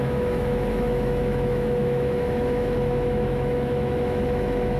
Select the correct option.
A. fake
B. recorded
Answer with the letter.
A